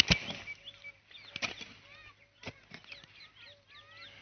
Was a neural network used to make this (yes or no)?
no